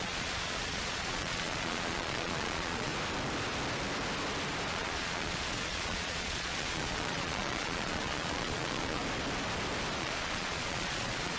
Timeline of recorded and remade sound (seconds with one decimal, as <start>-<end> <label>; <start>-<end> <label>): 0.0-2.9 remade; 2.9-4.7 recorded; 4.7-9.0 remade; 9.0-10.0 recorded; 10.0-11.4 remade